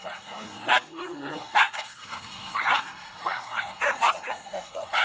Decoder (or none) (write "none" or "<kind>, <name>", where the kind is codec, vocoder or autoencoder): codec, SNAC